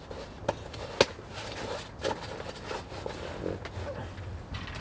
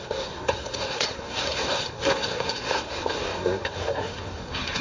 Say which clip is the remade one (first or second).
second